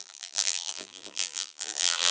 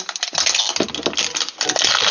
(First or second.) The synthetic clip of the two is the first